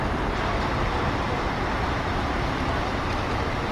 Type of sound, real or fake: real